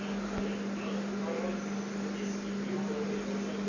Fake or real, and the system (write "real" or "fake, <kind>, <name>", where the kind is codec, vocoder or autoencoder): real